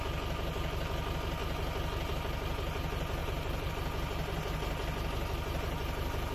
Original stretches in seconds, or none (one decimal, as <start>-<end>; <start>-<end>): 0.0-3.2; 3.7-6.3